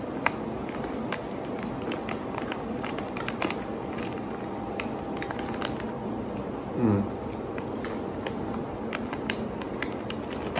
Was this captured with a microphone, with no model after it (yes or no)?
yes